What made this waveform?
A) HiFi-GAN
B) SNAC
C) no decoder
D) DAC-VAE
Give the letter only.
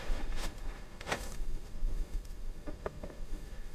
D